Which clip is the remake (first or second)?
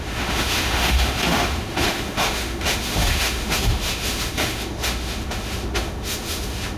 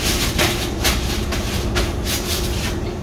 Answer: first